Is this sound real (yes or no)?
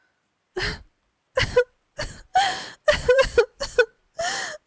no